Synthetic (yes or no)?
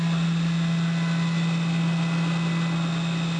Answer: no